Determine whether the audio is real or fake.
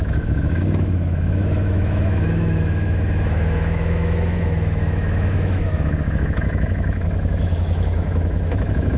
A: fake